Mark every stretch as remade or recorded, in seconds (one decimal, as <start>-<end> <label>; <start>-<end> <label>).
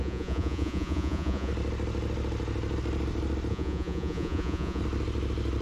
0.0-1.5 remade; 1.5-3.5 recorded; 3.5-4.8 remade; 4.8-5.6 recorded